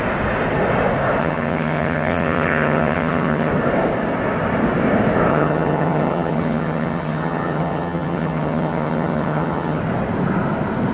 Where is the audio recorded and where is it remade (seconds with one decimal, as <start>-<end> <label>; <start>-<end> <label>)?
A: 0.0-1.2 recorded; 1.2-3.5 remade; 3.5-5.3 recorded; 5.3-9.8 remade; 9.8-10.9 recorded